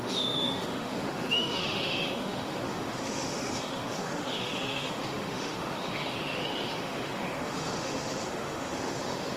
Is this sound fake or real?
fake